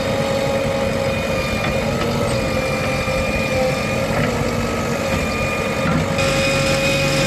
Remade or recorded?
recorded